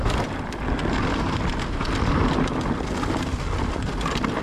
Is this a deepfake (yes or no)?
no